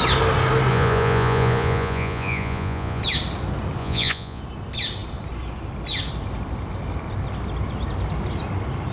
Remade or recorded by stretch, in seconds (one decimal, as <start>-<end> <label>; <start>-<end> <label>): 0.0-0.7 recorded; 0.7-3.0 remade; 3.0-3.8 recorded; 3.8-4.4 remade; 4.4-8.9 recorded